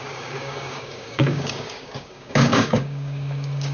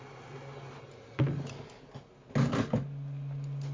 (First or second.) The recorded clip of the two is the second